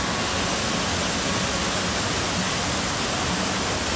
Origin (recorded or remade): recorded